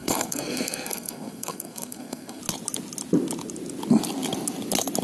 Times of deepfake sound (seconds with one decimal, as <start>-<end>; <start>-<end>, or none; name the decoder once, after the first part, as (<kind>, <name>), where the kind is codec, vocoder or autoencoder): 0.0-2.4 (codec, SNAC)